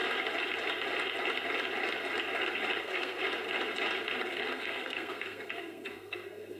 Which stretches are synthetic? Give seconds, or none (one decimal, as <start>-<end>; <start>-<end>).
2.8-3.2; 4.3-6.6